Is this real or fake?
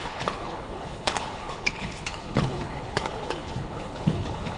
fake